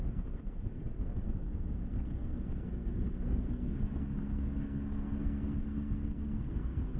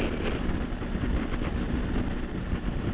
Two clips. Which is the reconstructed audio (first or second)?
first